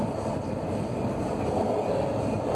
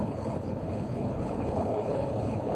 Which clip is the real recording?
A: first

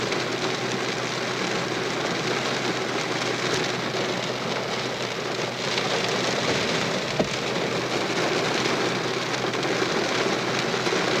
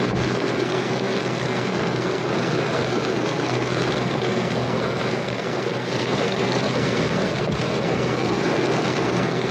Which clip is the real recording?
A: first